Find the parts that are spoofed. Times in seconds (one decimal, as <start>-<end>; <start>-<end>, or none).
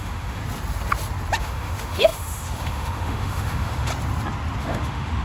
0.0-0.4; 1.4-3.9; 4.6-5.2